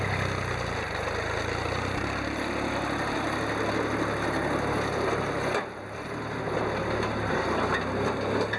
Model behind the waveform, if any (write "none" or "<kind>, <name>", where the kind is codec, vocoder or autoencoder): none